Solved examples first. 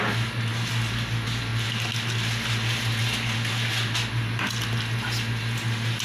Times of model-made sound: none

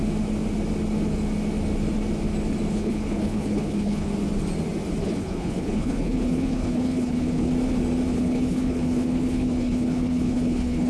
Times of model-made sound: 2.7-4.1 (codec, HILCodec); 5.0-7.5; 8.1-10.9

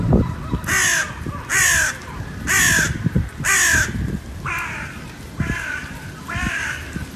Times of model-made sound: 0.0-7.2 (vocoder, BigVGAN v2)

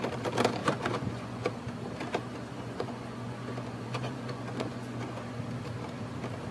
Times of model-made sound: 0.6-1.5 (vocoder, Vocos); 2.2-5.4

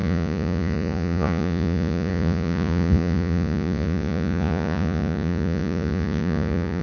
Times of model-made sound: 0.0-6.8 (vocoder, Vocos)

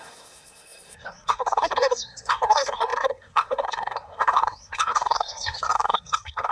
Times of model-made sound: 0.0-6.5 (codec, SNAC)

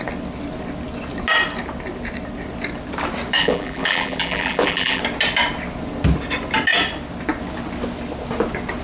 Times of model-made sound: 3.4-5.0 (vocoder, BigVGAN v2)

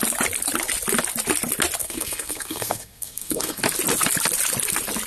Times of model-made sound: 1.8-3.6 (codec, SNAC)